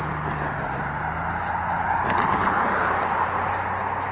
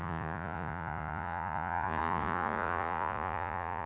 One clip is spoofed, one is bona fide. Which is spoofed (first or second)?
second